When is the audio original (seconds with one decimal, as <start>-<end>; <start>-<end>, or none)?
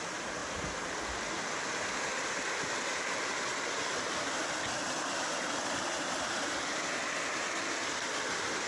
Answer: 0.4-2.3